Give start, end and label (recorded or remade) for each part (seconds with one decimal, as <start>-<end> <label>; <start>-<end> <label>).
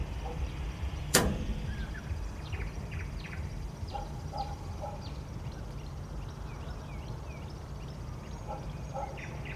0.0-4.9 remade; 4.9-9.6 recorded